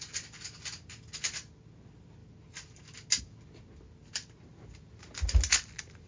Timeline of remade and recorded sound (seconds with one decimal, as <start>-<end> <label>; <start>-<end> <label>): 0.0-6.1 recorded